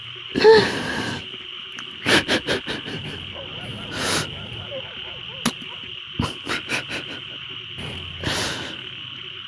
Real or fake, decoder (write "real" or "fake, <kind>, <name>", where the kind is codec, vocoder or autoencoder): real